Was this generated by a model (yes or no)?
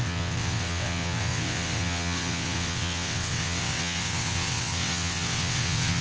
yes